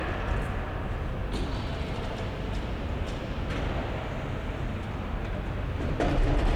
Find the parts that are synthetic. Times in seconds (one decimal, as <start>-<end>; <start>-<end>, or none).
1.2-5.2